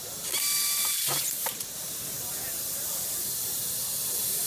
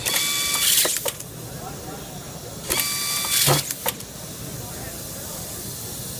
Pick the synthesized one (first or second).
first